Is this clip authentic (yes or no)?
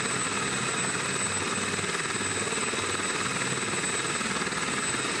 yes